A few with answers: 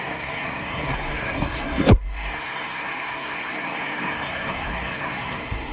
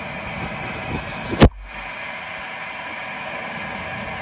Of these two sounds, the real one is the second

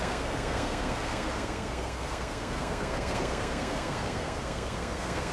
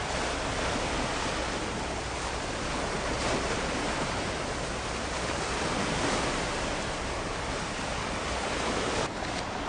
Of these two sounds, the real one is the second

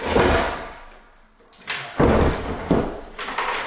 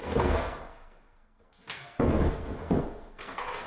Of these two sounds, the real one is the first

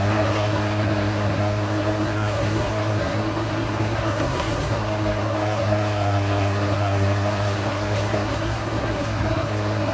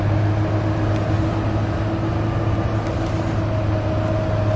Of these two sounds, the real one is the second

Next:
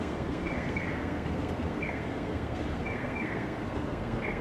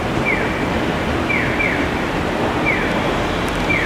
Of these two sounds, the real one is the second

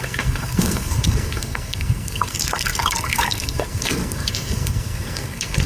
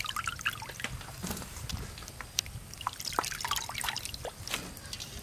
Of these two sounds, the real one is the second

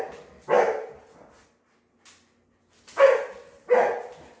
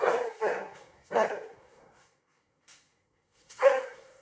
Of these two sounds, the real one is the first